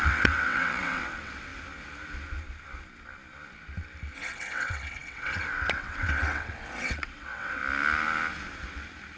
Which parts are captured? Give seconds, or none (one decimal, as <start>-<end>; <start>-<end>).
1.5-4.1; 7.6-9.2